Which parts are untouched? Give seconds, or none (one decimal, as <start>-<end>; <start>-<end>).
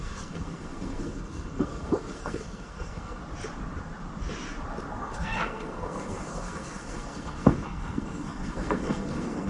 3.2-5.0